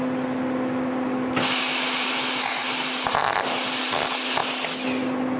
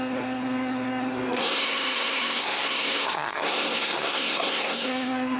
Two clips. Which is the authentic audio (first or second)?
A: first